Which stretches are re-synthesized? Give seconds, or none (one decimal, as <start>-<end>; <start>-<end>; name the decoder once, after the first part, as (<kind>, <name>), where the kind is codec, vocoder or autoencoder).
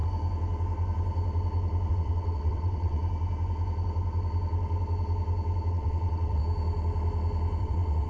1.9-3.0 (vocoder, WaveNeXt); 5.7-6.4; 7.6-8.1